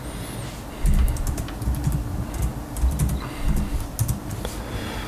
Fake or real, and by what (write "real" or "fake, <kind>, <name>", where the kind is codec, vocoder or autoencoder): real